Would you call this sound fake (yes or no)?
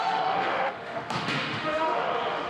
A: yes